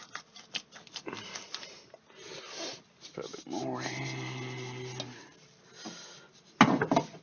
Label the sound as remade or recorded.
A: recorded